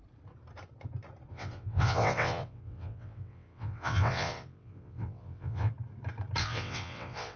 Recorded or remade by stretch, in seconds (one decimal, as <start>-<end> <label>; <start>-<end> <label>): 0.0-1.3 recorded; 1.3-5.7 remade; 5.7-6.4 recorded; 6.4-7.4 remade